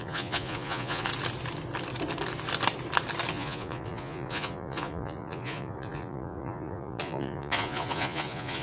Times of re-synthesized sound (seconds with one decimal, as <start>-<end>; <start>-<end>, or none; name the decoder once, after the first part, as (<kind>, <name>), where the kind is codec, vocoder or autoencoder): 0.0-1.1 (vocoder, Vocos); 3.3-8.6